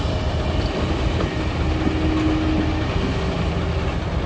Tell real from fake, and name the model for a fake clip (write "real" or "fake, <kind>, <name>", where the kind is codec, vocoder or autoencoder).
real